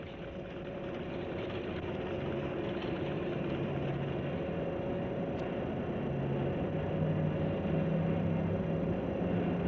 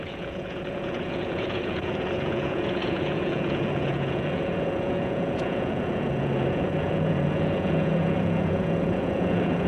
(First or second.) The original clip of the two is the first